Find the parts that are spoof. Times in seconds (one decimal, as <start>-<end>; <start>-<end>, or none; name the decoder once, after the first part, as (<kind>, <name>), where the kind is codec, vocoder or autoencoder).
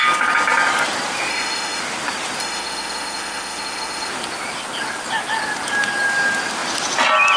1.3-1.8 (autoencoder, DAC-VAE); 2.4-4.1